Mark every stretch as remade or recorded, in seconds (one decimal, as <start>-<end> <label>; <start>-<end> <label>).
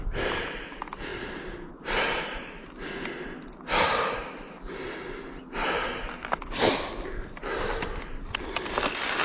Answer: 0.0-9.2 recorded